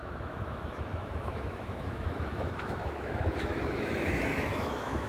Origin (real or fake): fake